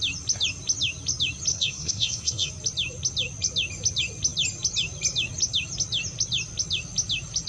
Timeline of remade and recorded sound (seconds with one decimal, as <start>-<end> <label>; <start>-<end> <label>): 0.0-1.5 recorded; 1.5-2.5 remade; 2.5-7.5 recorded